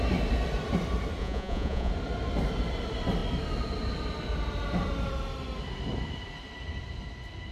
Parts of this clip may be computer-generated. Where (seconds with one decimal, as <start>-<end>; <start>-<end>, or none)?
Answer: 1.2-1.9